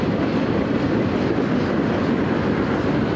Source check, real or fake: real